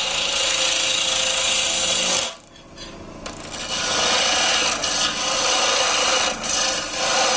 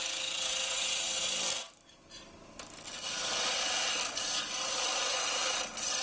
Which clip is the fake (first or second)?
second